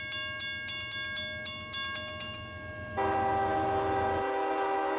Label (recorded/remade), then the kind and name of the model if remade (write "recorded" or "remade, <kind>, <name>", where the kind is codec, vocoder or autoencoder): recorded